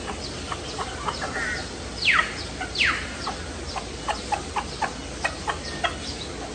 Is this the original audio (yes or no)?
yes